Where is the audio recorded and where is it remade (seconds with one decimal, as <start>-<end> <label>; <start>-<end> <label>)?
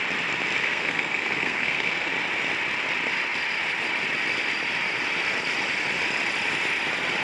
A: 0.0-0.6 recorded; 0.6-2.1 remade; 2.1-7.2 recorded